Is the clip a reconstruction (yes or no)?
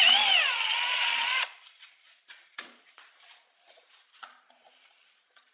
yes